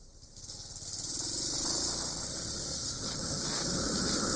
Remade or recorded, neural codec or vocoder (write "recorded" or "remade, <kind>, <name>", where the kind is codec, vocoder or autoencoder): recorded